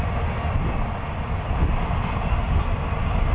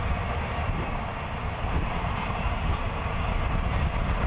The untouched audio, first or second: first